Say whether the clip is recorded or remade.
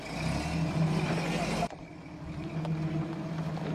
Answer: recorded